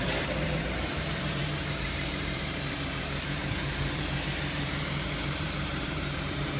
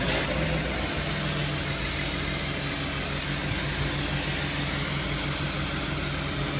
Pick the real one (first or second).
second